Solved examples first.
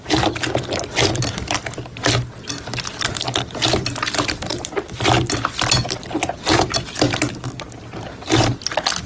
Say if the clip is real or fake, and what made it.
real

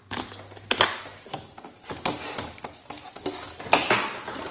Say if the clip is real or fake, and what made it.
real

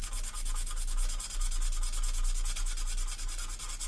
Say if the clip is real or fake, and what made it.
real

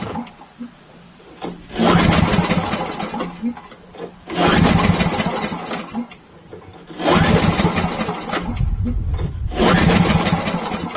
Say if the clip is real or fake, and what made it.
real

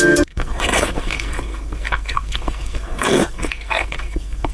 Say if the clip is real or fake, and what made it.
fake, codec, SNAC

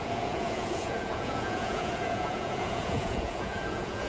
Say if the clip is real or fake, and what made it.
fake, vocoder, Vocos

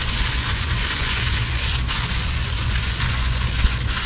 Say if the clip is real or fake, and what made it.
fake, vocoder, Vocos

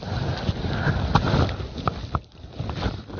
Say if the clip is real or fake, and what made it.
real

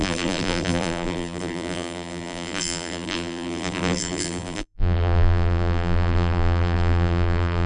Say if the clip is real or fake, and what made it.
fake, vocoder, BigVGAN v2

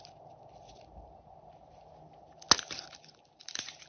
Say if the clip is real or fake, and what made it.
real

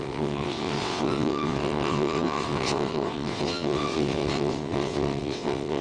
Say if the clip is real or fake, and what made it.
fake, vocoder, WaveNeXt